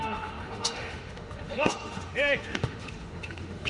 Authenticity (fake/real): fake